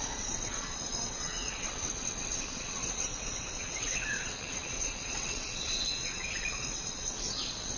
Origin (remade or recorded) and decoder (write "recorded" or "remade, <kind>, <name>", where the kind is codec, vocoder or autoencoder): remade, vocoder, WaveNeXt